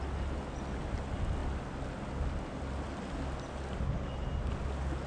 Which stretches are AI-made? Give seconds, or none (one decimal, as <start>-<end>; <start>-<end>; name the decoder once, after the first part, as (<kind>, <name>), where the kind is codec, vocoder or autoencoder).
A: none